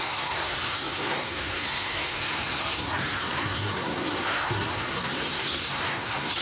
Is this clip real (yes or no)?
no